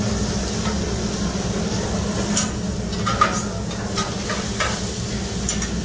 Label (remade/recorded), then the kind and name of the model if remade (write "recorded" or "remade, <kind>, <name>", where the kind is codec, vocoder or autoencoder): recorded